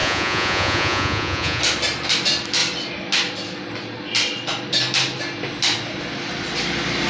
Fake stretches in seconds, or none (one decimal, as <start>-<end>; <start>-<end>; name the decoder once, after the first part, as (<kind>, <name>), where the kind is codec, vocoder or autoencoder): 0.0-1.6 (vocoder, Vocos)